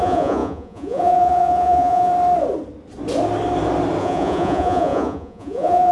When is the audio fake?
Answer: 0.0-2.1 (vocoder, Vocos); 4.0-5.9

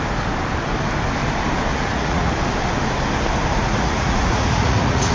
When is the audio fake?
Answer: 1.7-2.3 (vocoder, Vocos); 3.5-5.1

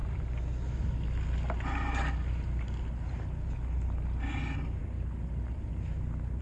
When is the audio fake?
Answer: none

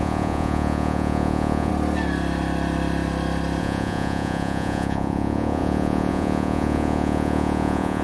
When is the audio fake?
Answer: 0.0-1.7 (vocoder, Vocos); 3.6-8.0

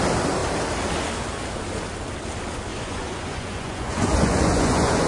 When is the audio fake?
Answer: 2.7-5.1 (vocoder, Vocos)

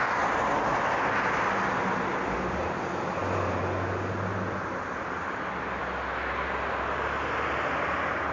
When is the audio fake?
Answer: none